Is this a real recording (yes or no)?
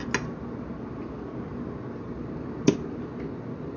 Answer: yes